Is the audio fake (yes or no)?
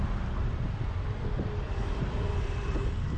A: yes